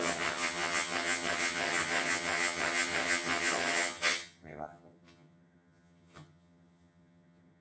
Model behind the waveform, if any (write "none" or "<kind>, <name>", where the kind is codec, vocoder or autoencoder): vocoder, HiFi-GAN